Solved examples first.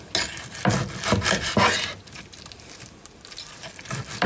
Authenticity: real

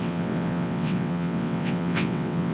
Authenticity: fake